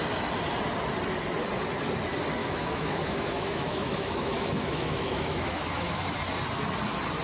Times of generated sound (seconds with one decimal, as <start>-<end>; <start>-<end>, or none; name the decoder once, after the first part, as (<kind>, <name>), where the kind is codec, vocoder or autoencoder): 2.4-6.1 (autoencoder, DAC-VAE)

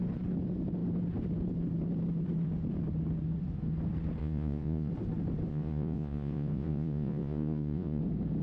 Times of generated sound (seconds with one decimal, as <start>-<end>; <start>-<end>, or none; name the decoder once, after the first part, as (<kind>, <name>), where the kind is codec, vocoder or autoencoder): 4.2-4.9 (vocoder, Vocos); 5.5-8.0

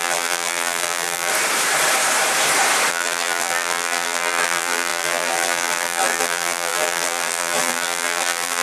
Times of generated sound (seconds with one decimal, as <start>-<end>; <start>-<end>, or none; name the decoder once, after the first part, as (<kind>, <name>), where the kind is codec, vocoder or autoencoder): 0.0-1.3 (vocoder, BigVGAN v2); 2.9-8.6

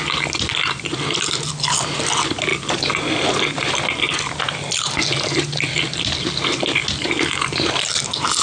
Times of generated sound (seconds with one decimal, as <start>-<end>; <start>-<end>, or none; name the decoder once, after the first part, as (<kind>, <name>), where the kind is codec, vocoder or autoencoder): none

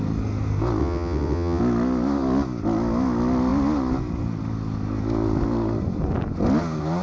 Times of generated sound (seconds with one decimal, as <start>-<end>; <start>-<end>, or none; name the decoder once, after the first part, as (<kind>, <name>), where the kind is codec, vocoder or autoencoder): 0.8-1.6 (vocoder, WaveNeXt)

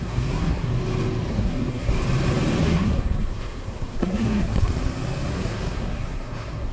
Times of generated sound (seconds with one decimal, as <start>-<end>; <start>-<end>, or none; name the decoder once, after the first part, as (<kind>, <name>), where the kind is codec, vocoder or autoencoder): 0.0-0.7 (codec, SNAC); 1.3-1.9; 2.6-4.7; 5.3-6.7